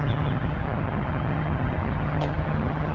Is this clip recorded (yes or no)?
no